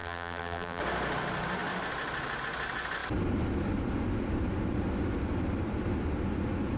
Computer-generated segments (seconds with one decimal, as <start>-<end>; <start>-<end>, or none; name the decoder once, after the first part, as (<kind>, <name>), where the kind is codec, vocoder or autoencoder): 0.0-0.8 (vocoder, BigVGAN v2)